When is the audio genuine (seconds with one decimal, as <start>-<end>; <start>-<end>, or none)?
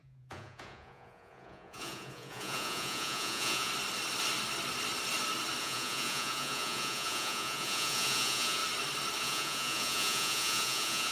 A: 3.7-5.6; 8.6-9.2